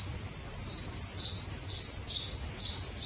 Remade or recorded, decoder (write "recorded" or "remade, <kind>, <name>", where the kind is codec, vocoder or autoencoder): recorded